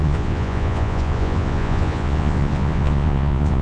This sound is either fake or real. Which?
fake